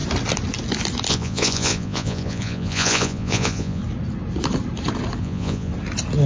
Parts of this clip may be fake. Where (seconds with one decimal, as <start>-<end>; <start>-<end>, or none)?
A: 1.1-3.8; 5.2-5.7